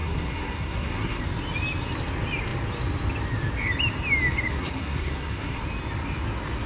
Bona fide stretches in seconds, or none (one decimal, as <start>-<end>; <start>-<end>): 1.2-4.5; 5.6-6.7